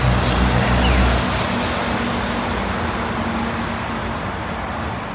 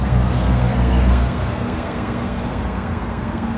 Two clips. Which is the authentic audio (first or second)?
first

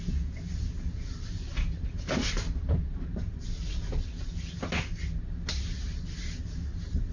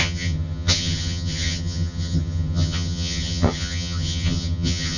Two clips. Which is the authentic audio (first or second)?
first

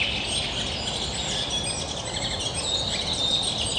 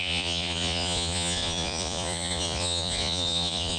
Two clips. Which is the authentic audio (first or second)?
first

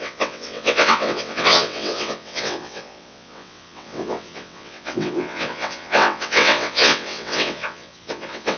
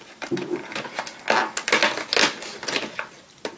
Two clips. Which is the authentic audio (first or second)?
second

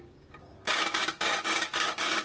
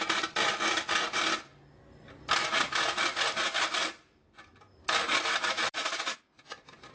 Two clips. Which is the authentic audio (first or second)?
second